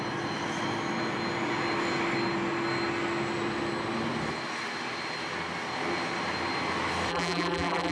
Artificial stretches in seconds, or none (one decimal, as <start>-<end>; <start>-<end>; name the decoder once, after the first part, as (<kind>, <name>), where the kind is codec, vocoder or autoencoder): 7.1-7.9 (vocoder, BigVGAN v2)

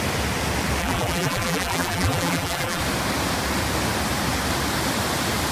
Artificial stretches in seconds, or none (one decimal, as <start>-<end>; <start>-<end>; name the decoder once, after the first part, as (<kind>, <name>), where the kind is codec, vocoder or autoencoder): 0.8-2.8 (vocoder, BigVGAN v2)

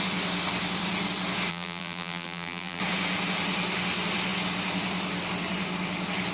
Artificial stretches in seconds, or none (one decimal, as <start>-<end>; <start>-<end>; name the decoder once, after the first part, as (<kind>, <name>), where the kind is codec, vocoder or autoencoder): 1.5-2.8 (vocoder, BigVGAN v2)

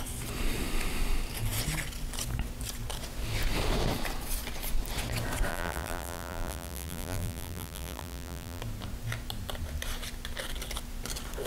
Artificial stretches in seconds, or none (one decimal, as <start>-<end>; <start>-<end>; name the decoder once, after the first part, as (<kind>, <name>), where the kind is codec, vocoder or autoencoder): 5.5-8.6 (vocoder, BigVGAN v2)

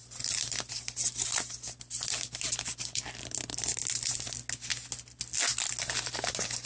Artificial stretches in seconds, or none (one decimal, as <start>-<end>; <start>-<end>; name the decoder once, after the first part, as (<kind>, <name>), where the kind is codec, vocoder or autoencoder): 0.0-3.7 (vocoder, BigVGAN v2)